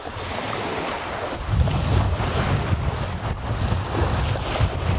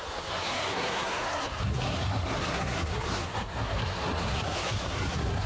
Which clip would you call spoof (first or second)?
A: second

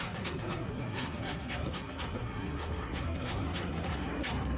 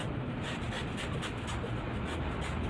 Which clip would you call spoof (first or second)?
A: first